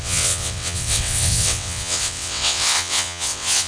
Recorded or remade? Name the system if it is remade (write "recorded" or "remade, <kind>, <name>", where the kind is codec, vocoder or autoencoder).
remade, vocoder, WaveNeXt